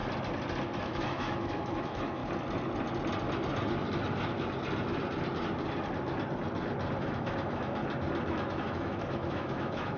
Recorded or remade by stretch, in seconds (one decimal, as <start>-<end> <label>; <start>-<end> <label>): 0.0-0.8 recorded; 0.8-2.2 remade; 2.2-7.0 recorded; 7.0-7.8 remade; 7.8-8.3 recorded; 8.3-10.0 remade